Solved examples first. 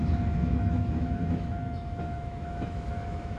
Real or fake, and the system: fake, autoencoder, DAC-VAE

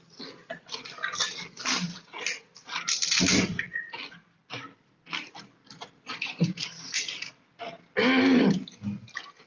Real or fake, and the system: real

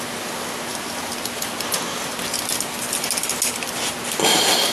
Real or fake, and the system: real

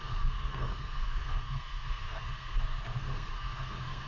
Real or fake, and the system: fake, codec, SNAC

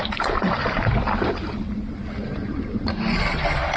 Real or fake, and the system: real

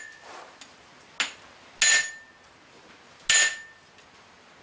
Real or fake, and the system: real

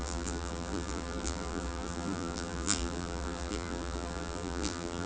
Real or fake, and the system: fake, vocoder, BigVGAN v2